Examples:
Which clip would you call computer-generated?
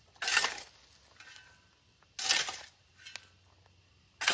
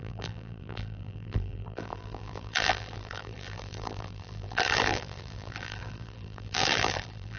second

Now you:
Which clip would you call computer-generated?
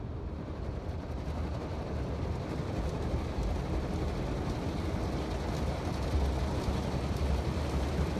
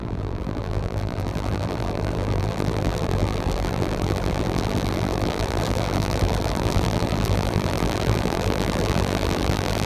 second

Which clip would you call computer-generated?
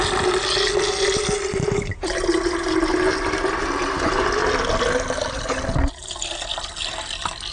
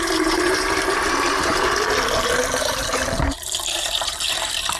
second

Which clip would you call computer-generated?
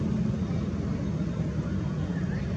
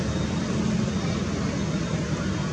first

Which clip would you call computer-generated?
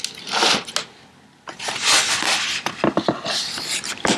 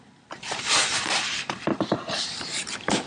second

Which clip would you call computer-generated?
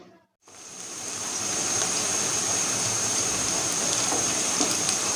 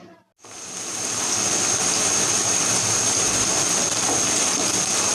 first